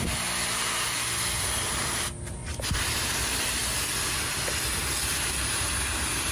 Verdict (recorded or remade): recorded